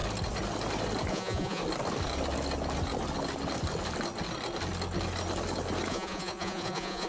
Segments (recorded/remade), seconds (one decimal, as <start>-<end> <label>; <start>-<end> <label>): 0.0-1.1 recorded; 1.1-1.6 remade; 1.6-5.9 recorded; 5.9-7.1 remade